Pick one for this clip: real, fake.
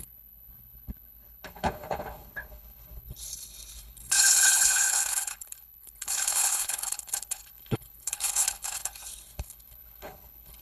fake